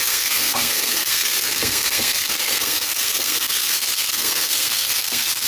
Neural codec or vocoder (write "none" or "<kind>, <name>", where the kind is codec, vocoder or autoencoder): codec, SNAC